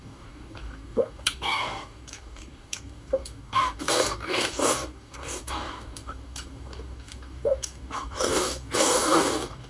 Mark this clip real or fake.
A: fake